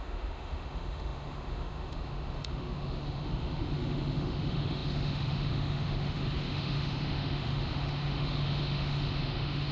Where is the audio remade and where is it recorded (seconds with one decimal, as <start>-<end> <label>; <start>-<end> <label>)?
0.0-9.7 remade